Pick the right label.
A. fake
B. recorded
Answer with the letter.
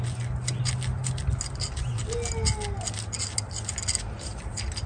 B